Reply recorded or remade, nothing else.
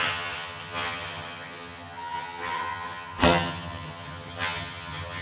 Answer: remade